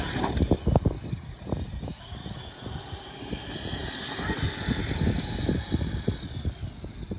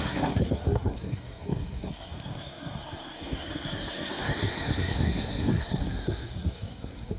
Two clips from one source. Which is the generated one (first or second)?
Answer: second